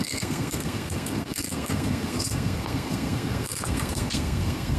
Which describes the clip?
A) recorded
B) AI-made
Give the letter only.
B